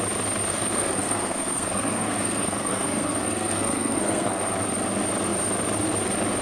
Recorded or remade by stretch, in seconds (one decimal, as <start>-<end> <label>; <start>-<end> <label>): 0.0-0.5 recorded; 0.5-4.3 remade; 4.3-6.4 recorded